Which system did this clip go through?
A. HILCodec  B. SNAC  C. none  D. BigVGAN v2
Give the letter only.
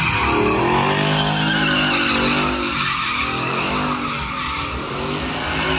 C